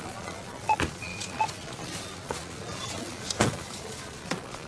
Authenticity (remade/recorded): remade